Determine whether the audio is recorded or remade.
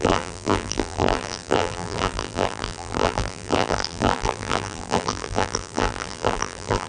remade